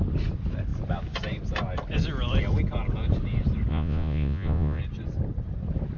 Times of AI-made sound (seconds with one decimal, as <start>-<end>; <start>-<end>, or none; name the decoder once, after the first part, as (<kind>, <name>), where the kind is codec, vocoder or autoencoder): 3.7-4.8 (vocoder, Vocos)